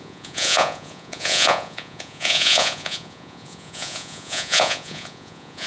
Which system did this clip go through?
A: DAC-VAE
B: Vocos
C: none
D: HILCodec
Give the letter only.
B